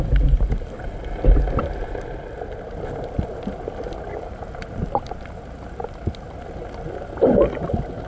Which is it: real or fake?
real